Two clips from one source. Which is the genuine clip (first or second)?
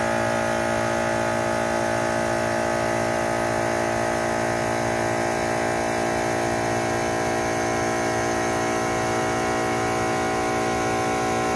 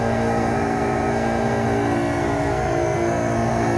first